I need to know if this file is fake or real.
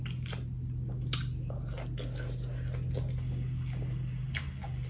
real